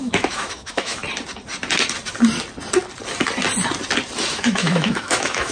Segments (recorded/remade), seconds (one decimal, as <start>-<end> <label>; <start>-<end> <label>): 0.0-1.0 remade; 1.0-4.3 recorded; 4.3-5.5 remade